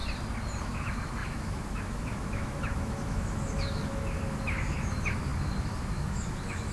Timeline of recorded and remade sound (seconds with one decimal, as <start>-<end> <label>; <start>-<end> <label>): 0.0-0.6 recorded; 0.6-6.7 remade